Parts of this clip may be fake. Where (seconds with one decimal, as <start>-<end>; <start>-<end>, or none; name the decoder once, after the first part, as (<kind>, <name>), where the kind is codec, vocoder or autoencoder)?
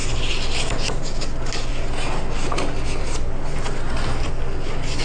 none